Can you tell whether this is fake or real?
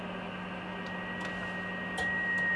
real